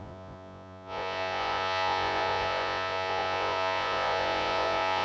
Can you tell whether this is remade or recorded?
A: remade